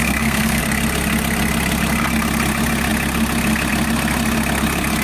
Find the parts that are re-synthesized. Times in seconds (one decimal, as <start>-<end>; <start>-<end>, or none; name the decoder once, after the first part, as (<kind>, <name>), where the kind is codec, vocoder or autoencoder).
0.0-0.6 (codec, SNAC)